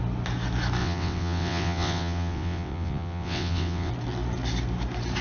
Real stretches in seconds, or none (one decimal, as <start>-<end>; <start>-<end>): 0.0-0.8; 3.9-5.2